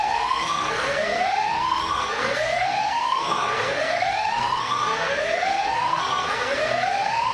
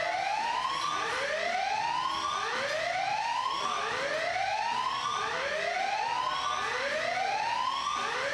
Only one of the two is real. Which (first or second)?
second